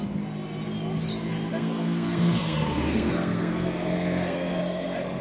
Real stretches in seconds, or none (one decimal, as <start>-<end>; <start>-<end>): 0.0-1.5; 4.6-5.2